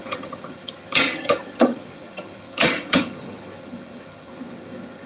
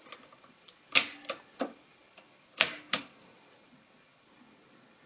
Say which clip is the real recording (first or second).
second